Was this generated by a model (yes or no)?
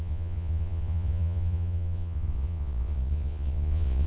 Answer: yes